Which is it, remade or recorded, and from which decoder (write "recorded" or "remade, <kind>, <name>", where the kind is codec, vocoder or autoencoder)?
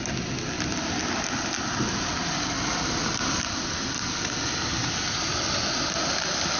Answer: recorded